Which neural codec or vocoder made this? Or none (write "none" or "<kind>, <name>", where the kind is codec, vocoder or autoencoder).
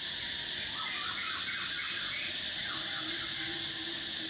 none